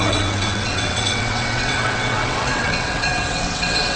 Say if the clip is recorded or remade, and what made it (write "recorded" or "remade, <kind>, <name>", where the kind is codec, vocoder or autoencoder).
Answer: remade, vocoder, WaveNeXt